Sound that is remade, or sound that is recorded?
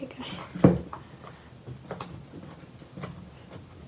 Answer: recorded